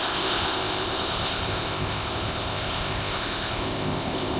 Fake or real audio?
fake